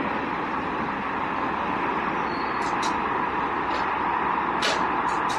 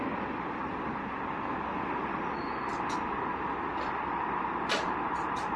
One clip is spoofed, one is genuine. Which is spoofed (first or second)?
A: first